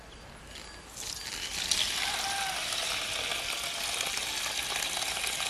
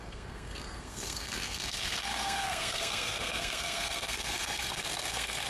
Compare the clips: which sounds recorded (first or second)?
first